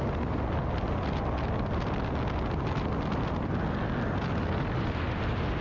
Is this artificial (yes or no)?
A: no